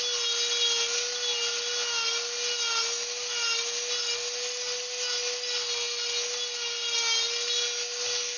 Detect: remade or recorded recorded